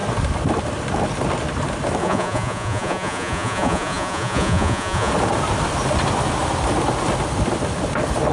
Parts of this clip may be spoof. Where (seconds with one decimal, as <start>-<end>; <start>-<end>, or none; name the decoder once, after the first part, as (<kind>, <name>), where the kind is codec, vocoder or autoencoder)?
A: 2.0-5.1 (vocoder, Vocos)

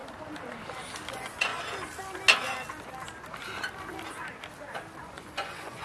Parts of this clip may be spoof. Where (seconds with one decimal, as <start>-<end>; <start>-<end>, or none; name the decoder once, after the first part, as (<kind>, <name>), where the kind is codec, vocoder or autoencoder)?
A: 1.1-1.5 (vocoder, Vocos); 5.0-5.8

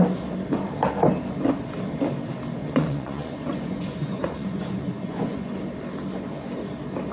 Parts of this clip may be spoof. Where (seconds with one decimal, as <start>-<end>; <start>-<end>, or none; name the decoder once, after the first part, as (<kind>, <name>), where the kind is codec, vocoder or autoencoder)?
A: 2.6-5.5 (vocoder, Vocos)